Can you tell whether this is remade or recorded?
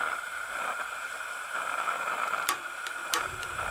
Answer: remade